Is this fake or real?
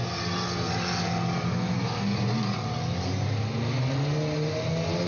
real